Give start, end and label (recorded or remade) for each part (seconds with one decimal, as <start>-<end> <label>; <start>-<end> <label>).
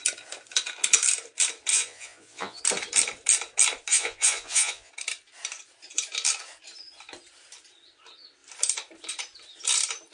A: 0.0-1.7 recorded; 1.7-2.6 remade; 2.6-3.9 recorded; 3.9-4.9 remade; 4.9-10.1 recorded